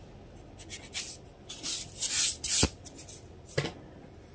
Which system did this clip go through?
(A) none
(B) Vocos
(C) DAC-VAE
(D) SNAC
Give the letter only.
A